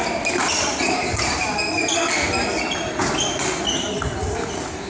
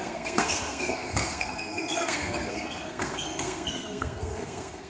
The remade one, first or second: second